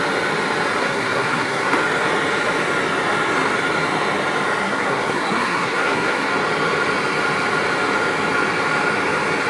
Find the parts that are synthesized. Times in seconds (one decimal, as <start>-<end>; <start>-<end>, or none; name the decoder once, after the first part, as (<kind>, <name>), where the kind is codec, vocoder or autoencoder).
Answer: 0.8-1.7 (codec, SNAC); 4.6-6.3